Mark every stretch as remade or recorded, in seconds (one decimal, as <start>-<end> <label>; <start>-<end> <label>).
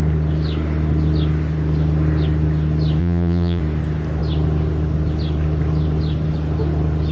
0.0-3.0 recorded; 3.0-3.6 remade; 3.6-7.1 recorded